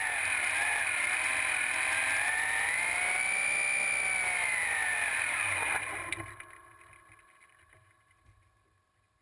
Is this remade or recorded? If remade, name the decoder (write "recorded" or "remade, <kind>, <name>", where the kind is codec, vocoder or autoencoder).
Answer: recorded